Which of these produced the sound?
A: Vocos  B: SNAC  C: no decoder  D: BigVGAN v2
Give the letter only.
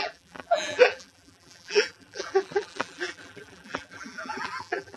D